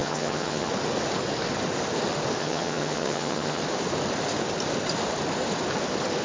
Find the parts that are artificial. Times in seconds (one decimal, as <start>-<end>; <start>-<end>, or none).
0.0-0.7; 2.4-3.6